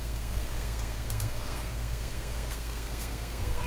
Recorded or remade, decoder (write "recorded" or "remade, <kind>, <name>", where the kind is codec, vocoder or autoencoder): remade, codec, SNAC